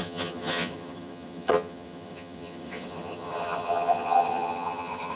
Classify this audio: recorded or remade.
remade